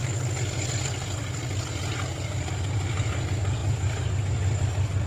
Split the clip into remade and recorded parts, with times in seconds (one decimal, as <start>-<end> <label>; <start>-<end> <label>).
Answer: 0.0-3.6 recorded; 3.6-4.1 remade; 4.1-5.1 recorded